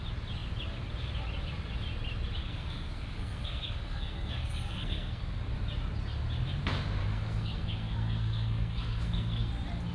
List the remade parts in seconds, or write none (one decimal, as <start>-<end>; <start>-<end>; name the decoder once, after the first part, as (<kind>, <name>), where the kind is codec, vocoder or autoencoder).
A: 2.4-5.5 (codec, SNAC); 7.0-9.5